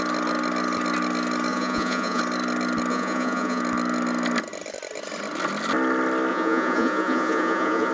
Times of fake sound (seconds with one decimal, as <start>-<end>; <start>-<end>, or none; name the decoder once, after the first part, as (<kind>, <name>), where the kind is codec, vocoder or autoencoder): 1.5-2.2 (vocoder, Vocos); 2.9-3.6; 6.3-7.9